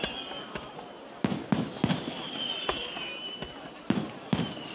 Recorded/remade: recorded